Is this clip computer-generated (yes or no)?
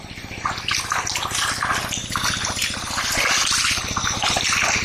no